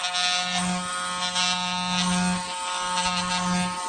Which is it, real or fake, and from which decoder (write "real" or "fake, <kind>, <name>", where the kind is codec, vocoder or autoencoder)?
real